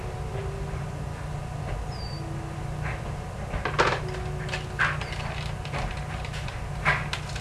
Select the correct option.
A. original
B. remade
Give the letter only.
A